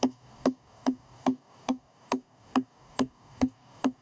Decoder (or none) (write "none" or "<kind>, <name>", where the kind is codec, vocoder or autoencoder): codec, DAC